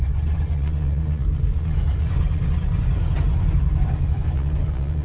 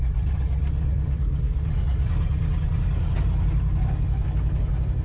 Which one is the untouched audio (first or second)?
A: second